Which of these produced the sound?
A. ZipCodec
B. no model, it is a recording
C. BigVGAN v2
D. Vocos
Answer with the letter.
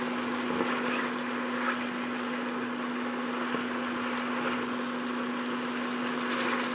B